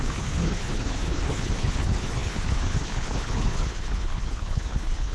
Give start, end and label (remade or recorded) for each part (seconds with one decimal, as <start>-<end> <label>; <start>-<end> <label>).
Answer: 0.0-5.1 remade

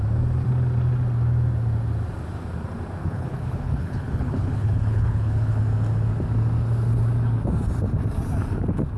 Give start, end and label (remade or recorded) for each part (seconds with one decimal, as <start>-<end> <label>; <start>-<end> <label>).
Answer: 0.0-3.0 recorded; 3.0-5.6 remade; 5.6-9.0 recorded

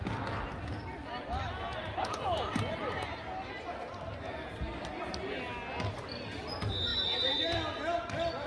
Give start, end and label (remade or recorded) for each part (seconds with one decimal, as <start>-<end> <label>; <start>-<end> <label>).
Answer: 0.0-8.5 recorded

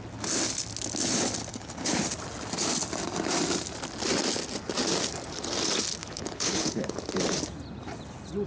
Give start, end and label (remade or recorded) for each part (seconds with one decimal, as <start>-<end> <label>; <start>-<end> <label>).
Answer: 0.0-1.5 recorded; 1.5-2.0 remade; 2.0-6.0 recorded; 6.0-6.9 remade; 6.9-8.5 recorded

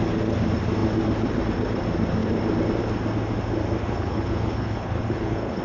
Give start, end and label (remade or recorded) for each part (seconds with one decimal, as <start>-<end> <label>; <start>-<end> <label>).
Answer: 0.0-3.8 recorded; 3.8-5.6 remade